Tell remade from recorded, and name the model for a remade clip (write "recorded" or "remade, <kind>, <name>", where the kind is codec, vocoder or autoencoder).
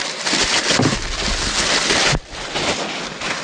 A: recorded